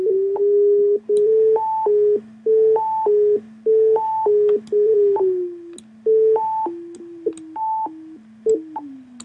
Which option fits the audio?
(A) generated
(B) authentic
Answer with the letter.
B